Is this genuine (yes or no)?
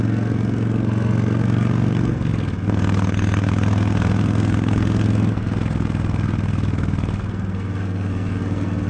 no